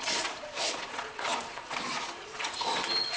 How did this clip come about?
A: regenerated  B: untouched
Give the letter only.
A